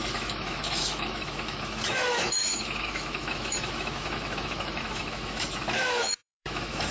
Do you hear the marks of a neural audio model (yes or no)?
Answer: yes